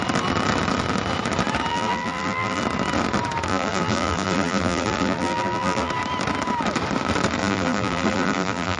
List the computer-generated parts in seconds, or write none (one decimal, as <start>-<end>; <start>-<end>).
1.7-2.6; 3.5-5.9; 7.4-8.8